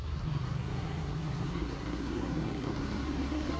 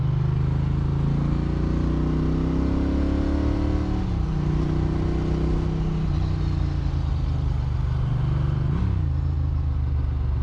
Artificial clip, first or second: first